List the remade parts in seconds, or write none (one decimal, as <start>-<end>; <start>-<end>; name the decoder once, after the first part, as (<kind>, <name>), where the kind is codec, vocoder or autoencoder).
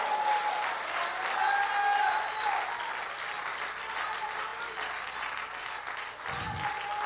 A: none